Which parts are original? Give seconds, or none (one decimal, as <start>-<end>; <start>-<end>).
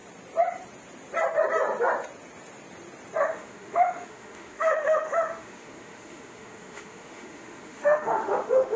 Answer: 0.0-3.2